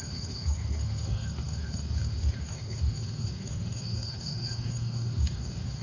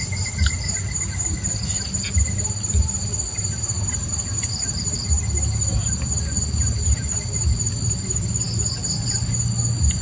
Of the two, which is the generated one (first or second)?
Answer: first